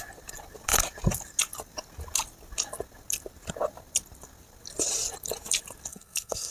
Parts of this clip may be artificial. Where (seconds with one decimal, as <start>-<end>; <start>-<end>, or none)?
5.9-6.5